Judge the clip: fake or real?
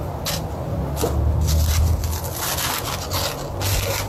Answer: real